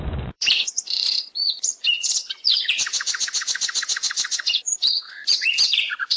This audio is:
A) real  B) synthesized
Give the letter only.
B